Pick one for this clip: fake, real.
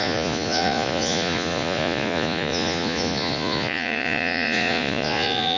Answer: fake